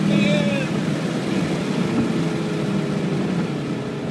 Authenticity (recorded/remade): recorded